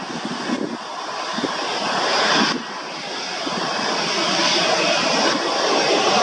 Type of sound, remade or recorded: recorded